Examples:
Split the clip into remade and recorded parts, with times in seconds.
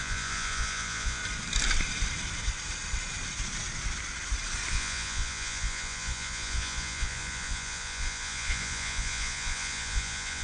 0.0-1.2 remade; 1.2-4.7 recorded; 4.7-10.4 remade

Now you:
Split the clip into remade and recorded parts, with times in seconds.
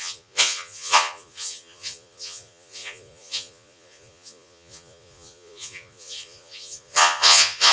0.0-7.7 remade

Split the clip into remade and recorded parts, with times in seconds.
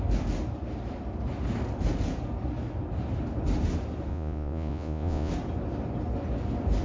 0.0-4.1 recorded; 4.1-5.3 remade; 5.3-6.8 recorded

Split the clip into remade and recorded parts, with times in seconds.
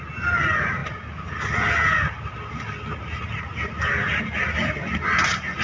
0.0-5.6 recorded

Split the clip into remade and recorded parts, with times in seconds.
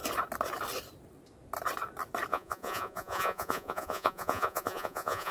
0.0-2.3 recorded; 2.3-5.3 remade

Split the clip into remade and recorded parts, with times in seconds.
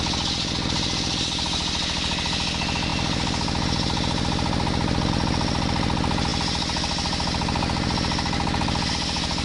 0.0-9.4 recorded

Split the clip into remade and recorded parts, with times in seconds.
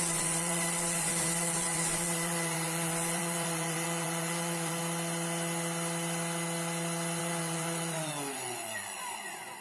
0.0-4.8 remade; 4.8-7.2 recorded; 7.2-9.6 remade